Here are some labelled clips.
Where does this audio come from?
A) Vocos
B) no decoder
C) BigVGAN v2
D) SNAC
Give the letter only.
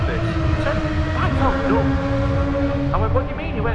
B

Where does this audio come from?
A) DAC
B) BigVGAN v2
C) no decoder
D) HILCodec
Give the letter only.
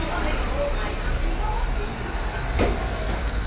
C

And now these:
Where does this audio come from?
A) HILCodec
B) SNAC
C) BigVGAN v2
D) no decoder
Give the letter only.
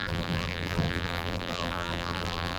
C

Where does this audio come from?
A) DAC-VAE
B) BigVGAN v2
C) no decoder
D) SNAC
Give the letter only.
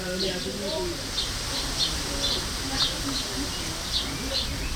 C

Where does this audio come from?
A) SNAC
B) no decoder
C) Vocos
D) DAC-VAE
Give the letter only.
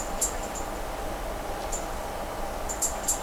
B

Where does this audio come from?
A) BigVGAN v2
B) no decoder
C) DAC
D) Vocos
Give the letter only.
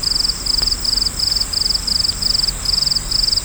B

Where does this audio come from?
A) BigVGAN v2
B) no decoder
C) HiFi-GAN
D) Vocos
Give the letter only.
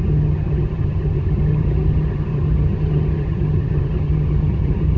C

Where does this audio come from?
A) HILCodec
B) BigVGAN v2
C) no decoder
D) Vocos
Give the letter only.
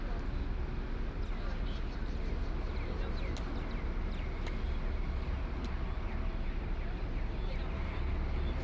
C